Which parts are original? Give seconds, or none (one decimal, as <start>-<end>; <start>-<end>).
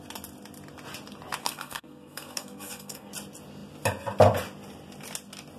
0.0-1.4; 3.1-5.6